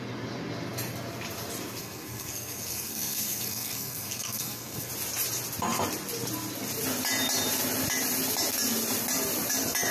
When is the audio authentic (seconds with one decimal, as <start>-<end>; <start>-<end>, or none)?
0.0-1.8; 4.9-9.9